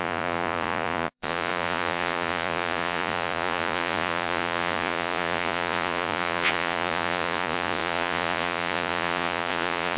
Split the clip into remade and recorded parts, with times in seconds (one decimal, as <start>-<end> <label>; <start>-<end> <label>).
0.0-10.0 remade